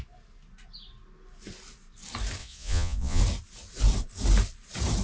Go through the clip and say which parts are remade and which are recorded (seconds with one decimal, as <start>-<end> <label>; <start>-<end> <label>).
0.0-2.4 recorded; 2.4-3.2 remade; 3.2-5.0 recorded